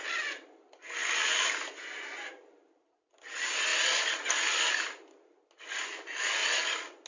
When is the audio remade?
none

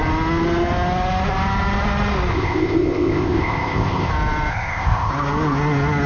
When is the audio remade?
2.3-4.1; 4.5-5.1